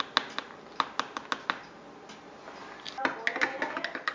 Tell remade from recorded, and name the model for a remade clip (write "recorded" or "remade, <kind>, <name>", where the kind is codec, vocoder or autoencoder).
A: recorded